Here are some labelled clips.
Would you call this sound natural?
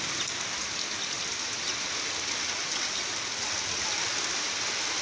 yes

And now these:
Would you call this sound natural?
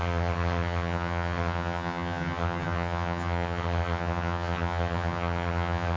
no